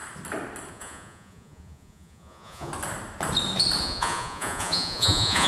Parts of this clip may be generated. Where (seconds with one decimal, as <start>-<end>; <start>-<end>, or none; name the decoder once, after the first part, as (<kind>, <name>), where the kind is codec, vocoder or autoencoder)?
0.7-2.7 (vocoder, Vocos); 3.8-5.5